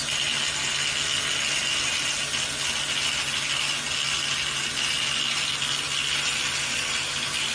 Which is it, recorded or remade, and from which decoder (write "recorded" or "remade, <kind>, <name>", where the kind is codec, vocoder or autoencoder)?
recorded